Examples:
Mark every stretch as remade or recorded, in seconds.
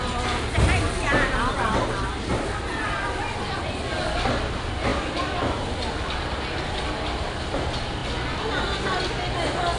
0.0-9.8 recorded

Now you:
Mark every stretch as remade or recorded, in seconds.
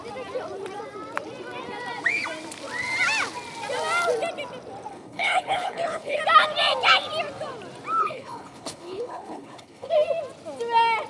0.0-4.9 recorded; 4.9-6.2 remade; 6.2-8.0 recorded; 8.0-9.9 remade; 9.9-11.1 recorded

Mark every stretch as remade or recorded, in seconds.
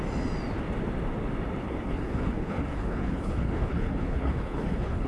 0.0-1.6 recorded; 1.6-5.1 remade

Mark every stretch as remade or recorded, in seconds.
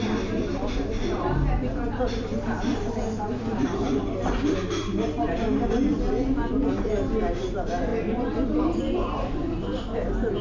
0.0-10.4 recorded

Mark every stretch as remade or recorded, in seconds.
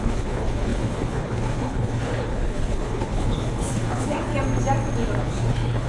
0.0-4.3 remade; 4.3-5.2 recorded; 5.2-5.9 remade